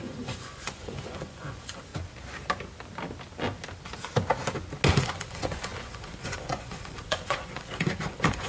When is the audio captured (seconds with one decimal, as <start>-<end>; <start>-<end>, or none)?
1.9-4.9

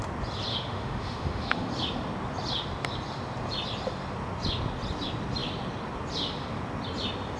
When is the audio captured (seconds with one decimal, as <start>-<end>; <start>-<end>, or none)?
0.0-0.5; 1.7-7.4

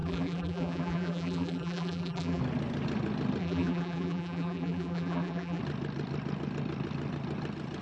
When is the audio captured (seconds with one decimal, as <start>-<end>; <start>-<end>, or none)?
2.4-3.4; 5.6-7.8

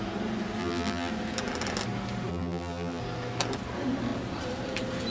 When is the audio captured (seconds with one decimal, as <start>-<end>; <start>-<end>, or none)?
0.0-0.6; 1.1-2.3; 3.0-5.1

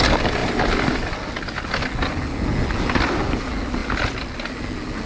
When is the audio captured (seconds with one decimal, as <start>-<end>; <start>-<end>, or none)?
0.0-5.1

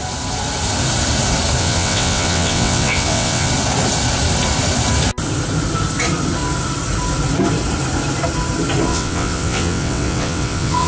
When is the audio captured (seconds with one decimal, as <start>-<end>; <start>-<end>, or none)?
0.0-1.6; 3.5-8.9